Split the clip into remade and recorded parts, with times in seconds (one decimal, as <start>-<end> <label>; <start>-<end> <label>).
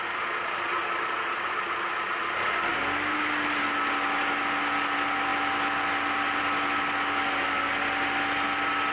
0.0-8.9 recorded